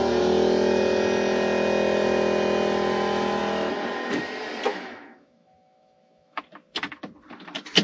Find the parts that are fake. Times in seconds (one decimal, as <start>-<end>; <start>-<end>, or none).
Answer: 2.9-3.4; 4.7-6.4